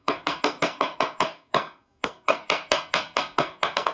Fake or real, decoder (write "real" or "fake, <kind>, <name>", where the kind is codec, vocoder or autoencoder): fake, codec, SNAC